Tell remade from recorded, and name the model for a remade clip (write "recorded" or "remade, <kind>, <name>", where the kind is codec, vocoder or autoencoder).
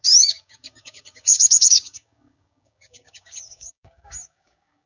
remade, codec, DAC